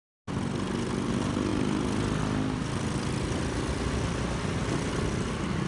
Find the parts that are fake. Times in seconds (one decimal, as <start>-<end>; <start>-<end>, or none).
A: none